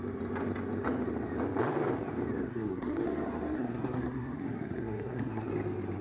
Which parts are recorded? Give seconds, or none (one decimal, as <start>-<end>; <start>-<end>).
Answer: 0.0-2.5; 5.5-6.0